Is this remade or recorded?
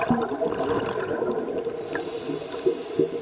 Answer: recorded